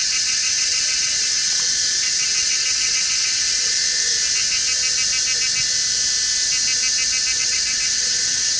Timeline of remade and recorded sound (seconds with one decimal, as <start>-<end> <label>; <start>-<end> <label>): 0.0-4.1 remade; 4.1-7.4 recorded; 7.4-8.6 remade